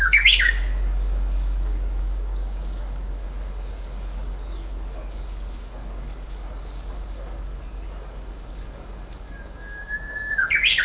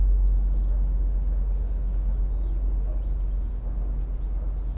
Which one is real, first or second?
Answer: second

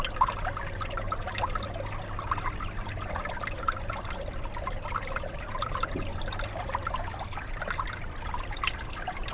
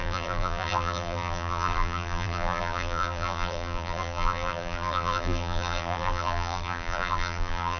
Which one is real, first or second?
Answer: first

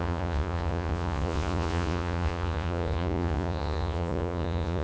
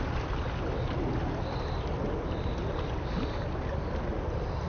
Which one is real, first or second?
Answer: second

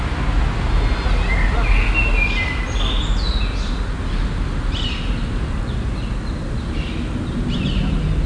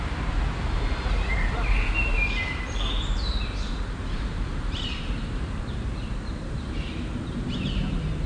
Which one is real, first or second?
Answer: first